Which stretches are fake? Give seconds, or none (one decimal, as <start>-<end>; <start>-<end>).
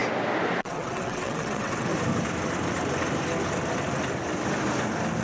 0.6-1.9